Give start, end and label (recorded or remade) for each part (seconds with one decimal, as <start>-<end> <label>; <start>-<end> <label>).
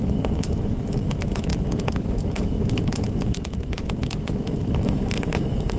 0.0-5.8 remade